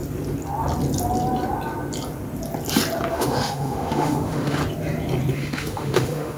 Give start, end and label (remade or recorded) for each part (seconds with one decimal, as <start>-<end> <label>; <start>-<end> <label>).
0.0-3.1 recorded; 3.1-4.6 remade; 4.6-5.3 recorded; 5.3-6.4 remade